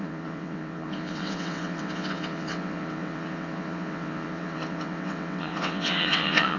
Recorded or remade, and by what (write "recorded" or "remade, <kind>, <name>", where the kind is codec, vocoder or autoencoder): remade, vocoder, WaveNeXt